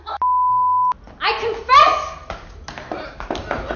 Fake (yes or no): no